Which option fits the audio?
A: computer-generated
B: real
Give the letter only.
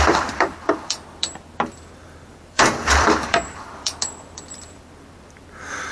A